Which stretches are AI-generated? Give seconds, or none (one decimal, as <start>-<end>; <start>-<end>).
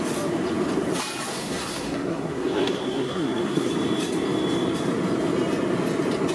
1.3-3.7